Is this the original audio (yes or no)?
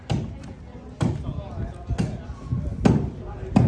yes